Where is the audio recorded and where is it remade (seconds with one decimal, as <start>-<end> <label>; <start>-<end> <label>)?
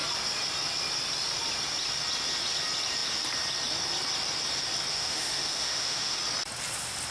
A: 0.0-4.9 recorded; 4.9-6.2 remade; 6.2-7.1 recorded